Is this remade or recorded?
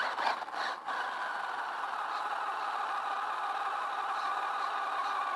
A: recorded